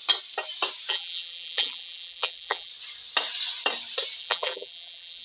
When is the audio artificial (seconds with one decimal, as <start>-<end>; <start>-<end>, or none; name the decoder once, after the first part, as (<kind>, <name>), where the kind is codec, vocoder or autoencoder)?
0.9-2.7 (vocoder, BigVGAN v2); 4.2-5.2

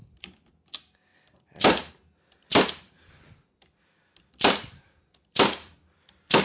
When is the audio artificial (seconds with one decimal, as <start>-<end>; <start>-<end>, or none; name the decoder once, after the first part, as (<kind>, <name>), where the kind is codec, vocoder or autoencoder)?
1.1-1.9 (vocoder, BigVGAN v2); 2.5-6.4

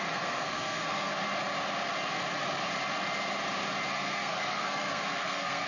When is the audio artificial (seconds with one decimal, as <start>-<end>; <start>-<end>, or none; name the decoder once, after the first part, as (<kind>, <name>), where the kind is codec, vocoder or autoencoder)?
0.0-1.1 (codec, SNAC); 3.9-5.7

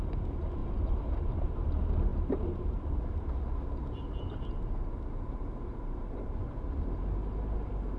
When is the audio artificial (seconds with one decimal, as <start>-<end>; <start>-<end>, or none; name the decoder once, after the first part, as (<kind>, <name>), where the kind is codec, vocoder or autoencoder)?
0.6-1.7 (vocoder, BigVGAN v2); 2.1-3.0; 5.7-6.4

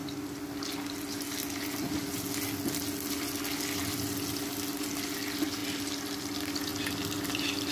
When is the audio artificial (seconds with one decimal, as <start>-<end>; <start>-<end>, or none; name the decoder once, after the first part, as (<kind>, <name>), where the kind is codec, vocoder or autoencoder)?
none